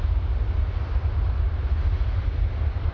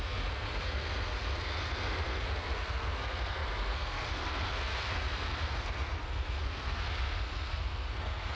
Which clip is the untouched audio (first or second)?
first